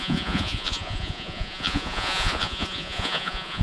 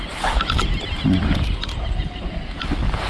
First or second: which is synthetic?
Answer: first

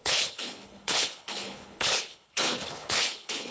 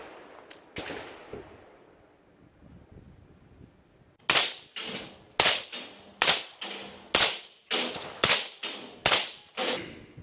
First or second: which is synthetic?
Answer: first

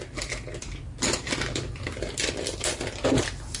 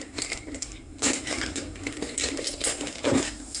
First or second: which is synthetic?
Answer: second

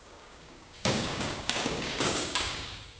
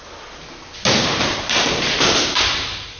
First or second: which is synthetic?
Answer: first